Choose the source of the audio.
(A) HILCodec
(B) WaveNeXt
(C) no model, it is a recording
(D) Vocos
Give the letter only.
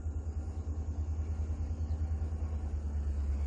C